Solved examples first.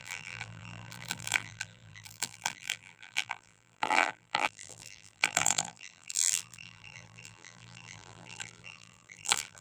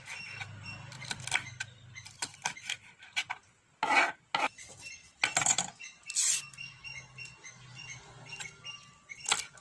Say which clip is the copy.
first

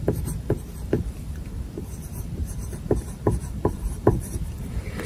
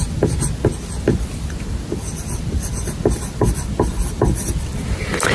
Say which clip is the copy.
first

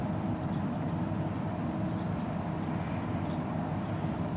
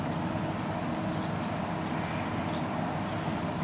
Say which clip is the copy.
first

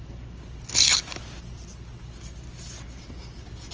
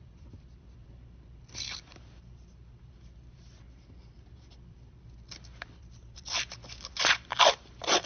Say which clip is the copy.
second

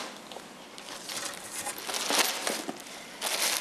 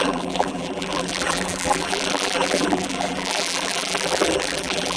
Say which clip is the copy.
second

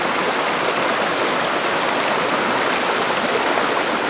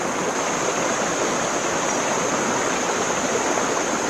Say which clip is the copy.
second